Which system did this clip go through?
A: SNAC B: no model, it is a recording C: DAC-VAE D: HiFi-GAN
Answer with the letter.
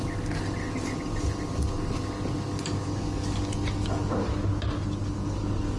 B